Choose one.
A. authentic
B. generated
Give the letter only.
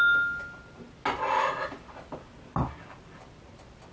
A